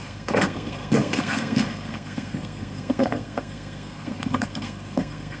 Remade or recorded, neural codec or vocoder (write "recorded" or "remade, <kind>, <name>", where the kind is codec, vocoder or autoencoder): remade, codec, SNAC